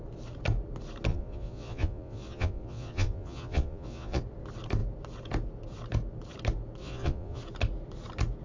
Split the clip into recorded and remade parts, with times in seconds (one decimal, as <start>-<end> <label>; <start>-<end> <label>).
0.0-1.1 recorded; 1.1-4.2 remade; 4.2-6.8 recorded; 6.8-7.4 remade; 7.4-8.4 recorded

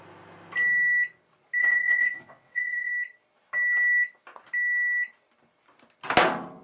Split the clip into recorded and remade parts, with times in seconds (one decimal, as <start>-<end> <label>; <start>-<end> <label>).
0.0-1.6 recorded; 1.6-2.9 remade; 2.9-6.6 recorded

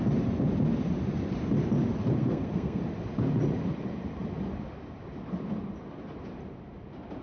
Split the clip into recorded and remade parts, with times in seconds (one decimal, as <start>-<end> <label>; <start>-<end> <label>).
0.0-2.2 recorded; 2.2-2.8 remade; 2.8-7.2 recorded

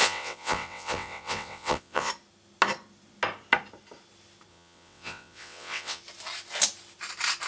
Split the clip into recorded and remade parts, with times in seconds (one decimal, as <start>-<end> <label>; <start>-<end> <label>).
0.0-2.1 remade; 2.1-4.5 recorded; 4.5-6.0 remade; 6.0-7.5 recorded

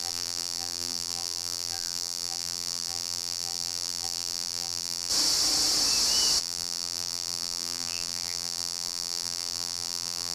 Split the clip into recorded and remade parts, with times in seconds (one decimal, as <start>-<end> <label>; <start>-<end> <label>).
0.0-5.1 remade; 5.1-6.4 recorded; 6.4-10.3 remade

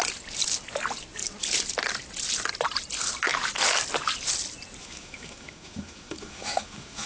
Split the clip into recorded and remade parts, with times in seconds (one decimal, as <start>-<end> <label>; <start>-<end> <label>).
0.0-4.8 recorded; 4.8-7.1 remade

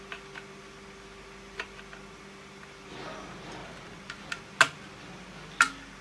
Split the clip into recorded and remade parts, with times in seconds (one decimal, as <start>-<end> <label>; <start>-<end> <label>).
0.0-3.6 recorded; 3.6-4.2 remade; 4.2-6.0 recorded